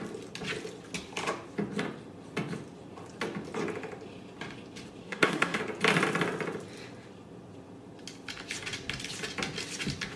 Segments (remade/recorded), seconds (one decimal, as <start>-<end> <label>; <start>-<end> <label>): 0.0-5.0 recorded; 5.0-5.6 remade; 5.6-10.2 recorded